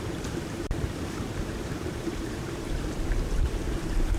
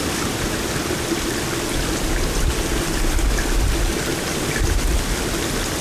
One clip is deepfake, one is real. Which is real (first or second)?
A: second